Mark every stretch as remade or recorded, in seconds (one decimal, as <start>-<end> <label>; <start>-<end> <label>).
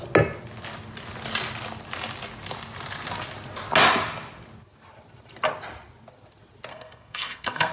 0.0-6.7 recorded; 6.7-7.7 remade